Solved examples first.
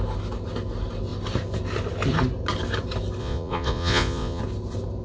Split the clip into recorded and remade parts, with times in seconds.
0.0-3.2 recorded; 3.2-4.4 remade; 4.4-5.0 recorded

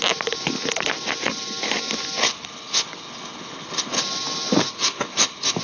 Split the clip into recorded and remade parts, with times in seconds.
0.0-2.2 recorded; 2.2-4.0 remade; 4.0-4.7 recorded; 4.7-5.6 remade

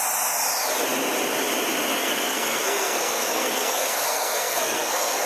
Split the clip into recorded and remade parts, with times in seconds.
0.0-2.0 recorded; 2.0-5.3 remade